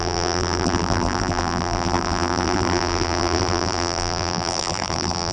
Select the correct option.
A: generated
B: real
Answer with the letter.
A